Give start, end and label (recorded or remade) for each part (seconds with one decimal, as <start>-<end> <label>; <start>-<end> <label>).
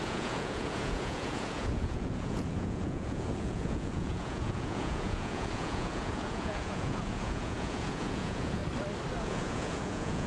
0.0-8.6 remade; 8.6-9.2 recorded; 9.2-10.3 remade